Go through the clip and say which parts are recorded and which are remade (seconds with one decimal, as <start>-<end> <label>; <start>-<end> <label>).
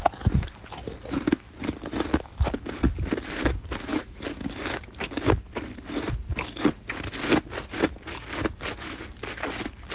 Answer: 0.0-3.9 recorded; 3.9-4.6 remade; 4.6-9.9 recorded